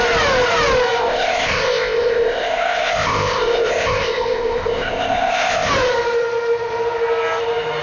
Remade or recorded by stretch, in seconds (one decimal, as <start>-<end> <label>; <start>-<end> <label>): 0.0-1.0 recorded; 1.0-5.7 remade; 5.7-7.8 recorded